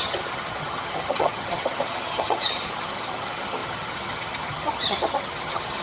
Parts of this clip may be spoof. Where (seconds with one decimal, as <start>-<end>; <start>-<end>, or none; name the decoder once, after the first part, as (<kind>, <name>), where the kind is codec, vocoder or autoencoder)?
0.0-5.8 (vocoder, HiFi-GAN)